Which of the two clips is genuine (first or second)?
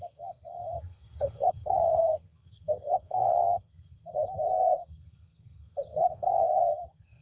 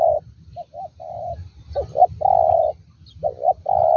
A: second